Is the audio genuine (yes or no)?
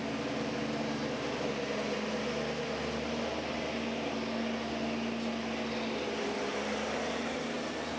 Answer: yes